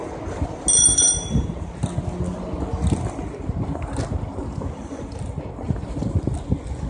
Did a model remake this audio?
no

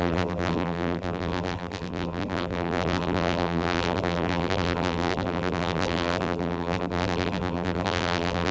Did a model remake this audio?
yes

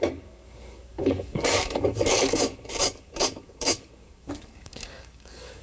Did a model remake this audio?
yes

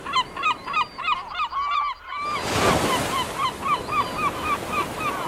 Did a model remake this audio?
no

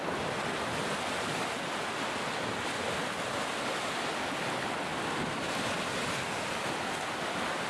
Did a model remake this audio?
no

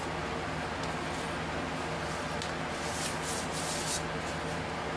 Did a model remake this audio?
no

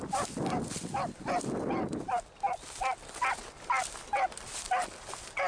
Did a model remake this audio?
no